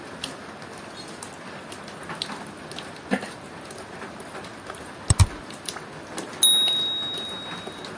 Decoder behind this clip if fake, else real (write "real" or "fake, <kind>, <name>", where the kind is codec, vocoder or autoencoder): real